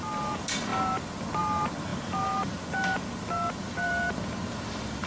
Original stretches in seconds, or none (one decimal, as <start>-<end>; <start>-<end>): 0.0-5.1